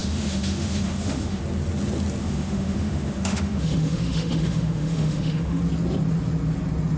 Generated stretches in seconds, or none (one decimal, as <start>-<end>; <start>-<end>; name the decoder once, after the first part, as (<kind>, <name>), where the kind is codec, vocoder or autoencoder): 0.0-1.4 (autoencoder, DAC-VAE); 2.2-5.6

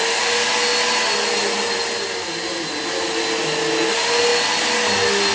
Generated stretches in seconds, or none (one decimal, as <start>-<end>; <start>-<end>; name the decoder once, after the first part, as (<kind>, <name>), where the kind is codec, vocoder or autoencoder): none

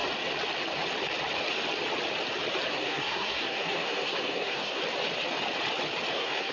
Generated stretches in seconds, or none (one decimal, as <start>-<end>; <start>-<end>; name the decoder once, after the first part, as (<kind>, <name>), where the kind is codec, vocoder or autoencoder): 2.7-4.8 (codec, SNAC); 6.1-6.5

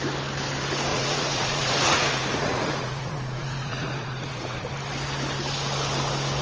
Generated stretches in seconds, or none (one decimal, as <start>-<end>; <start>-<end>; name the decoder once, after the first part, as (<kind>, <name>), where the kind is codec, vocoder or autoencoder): 0.9-4.7 (vocoder, Vocos)